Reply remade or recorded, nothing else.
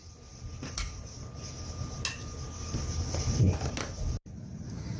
recorded